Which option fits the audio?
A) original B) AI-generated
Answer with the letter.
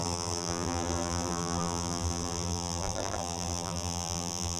B